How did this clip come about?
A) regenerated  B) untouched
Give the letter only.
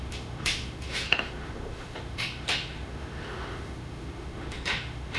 A